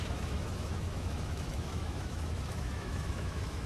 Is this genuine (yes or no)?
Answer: no